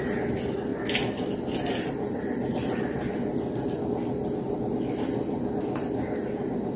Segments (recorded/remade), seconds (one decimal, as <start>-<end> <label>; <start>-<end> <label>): 0.0-6.8 recorded